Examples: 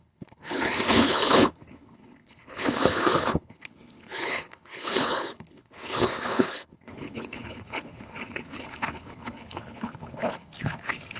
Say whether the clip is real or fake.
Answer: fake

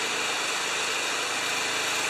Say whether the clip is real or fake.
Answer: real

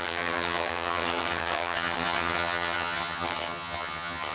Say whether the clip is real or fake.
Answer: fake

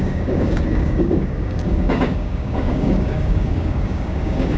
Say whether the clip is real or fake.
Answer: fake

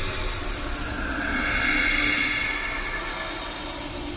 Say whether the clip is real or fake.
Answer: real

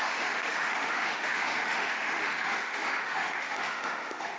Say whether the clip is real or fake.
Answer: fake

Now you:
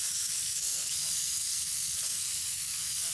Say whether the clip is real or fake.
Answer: fake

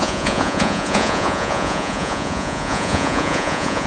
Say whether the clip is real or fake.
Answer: fake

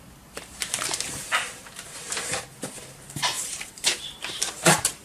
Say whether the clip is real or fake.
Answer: fake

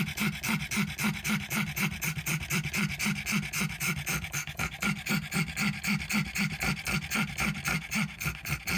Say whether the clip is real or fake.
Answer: real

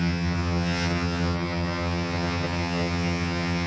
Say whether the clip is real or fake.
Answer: fake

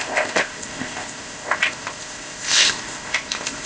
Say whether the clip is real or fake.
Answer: fake